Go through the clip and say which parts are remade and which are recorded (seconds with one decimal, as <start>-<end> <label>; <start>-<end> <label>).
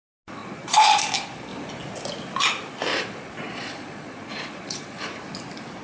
0.0-0.4 recorded; 0.4-1.0 remade; 1.0-2.9 recorded; 2.9-5.1 remade; 5.1-5.8 recorded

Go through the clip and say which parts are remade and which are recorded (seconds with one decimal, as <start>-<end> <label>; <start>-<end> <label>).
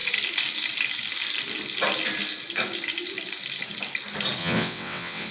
0.0-4.4 recorded; 4.4-5.3 remade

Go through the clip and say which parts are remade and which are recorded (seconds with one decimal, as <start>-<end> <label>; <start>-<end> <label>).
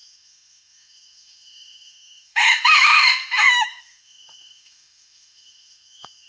0.0-6.3 remade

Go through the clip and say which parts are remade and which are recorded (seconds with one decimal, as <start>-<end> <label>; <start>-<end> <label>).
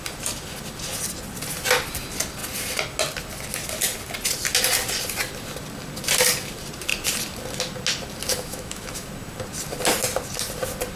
0.0-8.3 recorded; 8.3-9.1 remade; 9.1-11.0 recorded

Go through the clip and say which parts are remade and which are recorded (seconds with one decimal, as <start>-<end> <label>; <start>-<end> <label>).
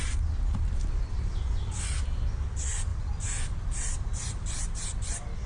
0.0-5.5 recorded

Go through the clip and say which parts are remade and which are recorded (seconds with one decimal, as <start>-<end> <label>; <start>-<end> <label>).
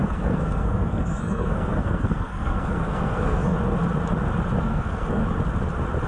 0.0-3.5 remade; 3.5-4.6 recorded; 4.6-5.2 remade; 5.2-6.1 recorded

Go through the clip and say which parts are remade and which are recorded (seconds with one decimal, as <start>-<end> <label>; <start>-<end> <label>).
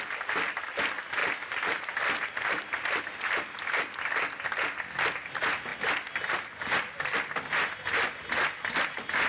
0.0-1.2 recorded; 1.2-1.9 remade; 1.9-9.3 recorded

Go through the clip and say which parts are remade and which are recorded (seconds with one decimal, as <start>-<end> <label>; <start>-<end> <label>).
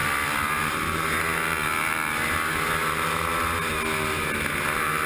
0.0-5.1 recorded